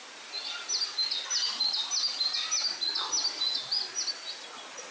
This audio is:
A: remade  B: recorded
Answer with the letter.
B